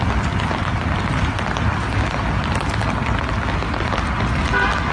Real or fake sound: real